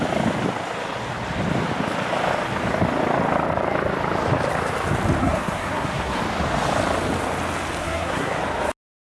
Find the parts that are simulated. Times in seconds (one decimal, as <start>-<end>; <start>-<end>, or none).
5.2-6.2; 7.8-8.4